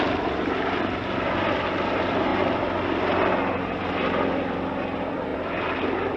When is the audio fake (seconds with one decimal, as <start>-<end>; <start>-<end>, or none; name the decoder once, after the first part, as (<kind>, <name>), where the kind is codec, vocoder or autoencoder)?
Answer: none